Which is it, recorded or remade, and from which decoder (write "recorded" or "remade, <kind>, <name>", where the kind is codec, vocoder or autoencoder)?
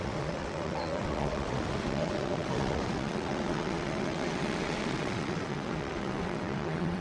remade, vocoder, WaveNeXt